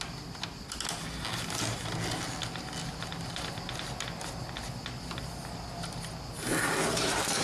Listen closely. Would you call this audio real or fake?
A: real